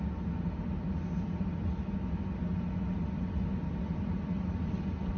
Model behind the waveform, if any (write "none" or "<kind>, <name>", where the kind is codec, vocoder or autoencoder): none